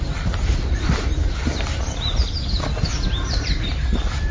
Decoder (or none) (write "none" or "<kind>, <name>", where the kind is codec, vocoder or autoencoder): none